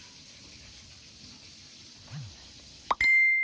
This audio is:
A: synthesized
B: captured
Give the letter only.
B